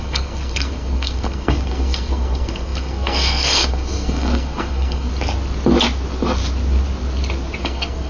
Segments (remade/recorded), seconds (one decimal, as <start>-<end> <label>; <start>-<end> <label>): 0.0-5.1 remade; 5.1-7.6 recorded; 7.6-8.1 remade